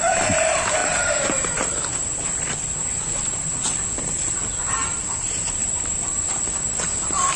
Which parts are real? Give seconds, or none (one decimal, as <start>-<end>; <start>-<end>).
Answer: 3.5-4.6